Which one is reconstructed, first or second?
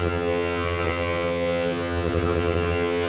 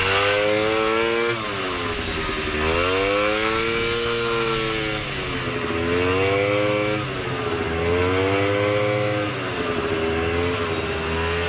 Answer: first